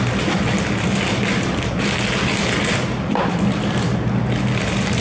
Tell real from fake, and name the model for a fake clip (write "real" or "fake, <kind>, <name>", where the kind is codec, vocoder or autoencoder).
real